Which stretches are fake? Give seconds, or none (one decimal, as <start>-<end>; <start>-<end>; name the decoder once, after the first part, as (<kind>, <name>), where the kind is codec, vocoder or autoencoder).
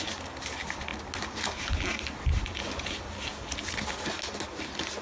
none